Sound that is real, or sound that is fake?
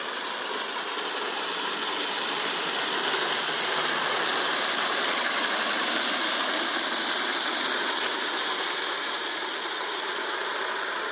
fake